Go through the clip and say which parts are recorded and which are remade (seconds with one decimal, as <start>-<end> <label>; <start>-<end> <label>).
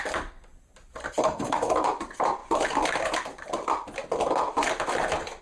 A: 0.0-1.2 recorded; 1.2-1.7 remade; 1.7-5.4 recorded